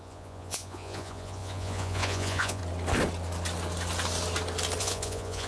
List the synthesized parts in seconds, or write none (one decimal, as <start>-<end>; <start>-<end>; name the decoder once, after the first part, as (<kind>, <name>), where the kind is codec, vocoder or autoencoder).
0.0-2.6 (vocoder, Vocos); 4.8-5.5